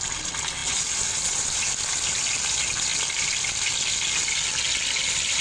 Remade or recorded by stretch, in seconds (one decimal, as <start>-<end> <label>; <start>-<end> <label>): 0.0-5.4 recorded